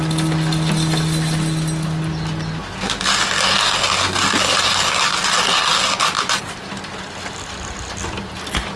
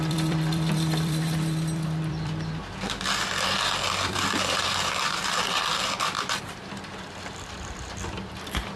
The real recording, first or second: first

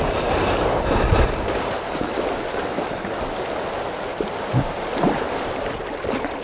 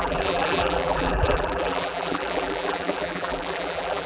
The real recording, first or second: first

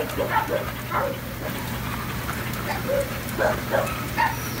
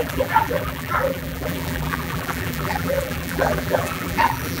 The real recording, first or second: first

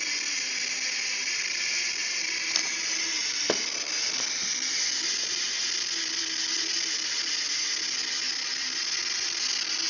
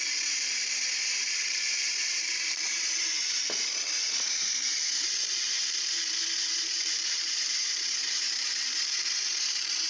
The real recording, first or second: first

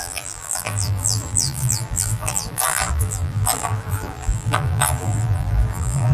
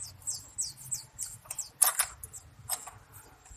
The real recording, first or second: second